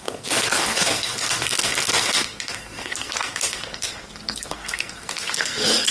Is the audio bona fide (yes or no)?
no